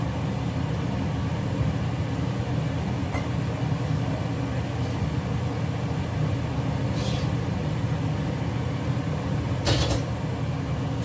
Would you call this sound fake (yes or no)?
no